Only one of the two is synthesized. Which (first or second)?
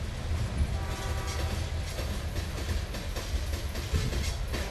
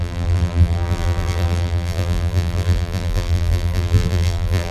second